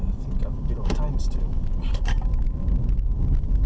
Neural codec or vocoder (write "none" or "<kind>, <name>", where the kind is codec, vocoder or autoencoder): none